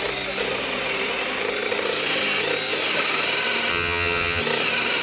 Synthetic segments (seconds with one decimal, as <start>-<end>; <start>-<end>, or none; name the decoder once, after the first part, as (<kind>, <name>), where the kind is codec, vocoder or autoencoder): 3.7-4.4 (vocoder, HiFi-GAN)